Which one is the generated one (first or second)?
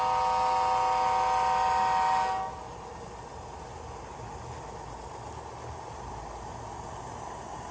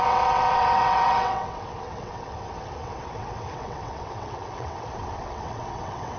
second